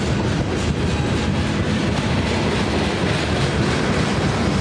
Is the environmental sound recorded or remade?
recorded